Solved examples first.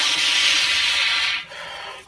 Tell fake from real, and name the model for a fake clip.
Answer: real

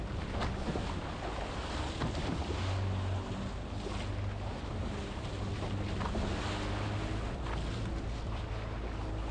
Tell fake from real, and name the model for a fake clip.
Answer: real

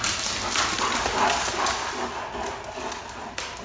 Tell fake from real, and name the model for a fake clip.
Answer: real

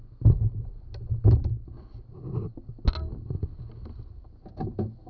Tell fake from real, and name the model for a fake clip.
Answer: real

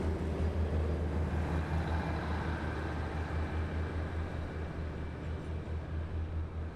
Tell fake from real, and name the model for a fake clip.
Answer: real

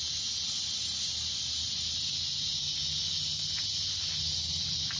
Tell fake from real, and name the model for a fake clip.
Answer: real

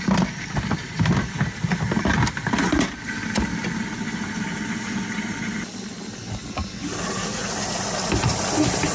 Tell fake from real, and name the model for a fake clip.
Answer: real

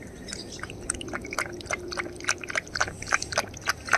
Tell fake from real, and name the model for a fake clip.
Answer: fake, vocoder, BigVGAN v2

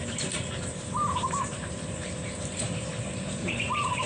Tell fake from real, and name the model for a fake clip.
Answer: fake, vocoder, BigVGAN v2